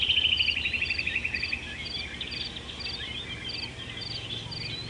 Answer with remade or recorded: recorded